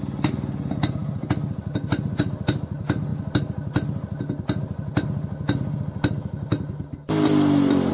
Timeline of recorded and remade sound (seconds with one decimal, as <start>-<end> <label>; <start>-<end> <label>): 0.0-7.9 recorded